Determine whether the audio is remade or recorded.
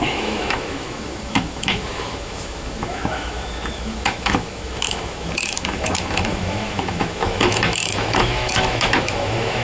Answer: remade